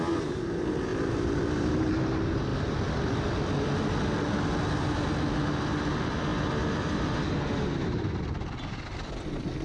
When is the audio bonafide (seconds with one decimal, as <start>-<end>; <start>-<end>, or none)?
0.0-0.9; 1.7-2.5; 3.3-9.6